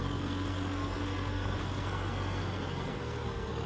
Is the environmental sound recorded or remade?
remade